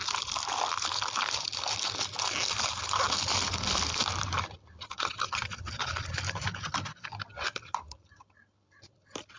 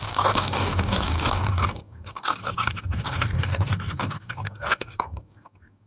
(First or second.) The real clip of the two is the first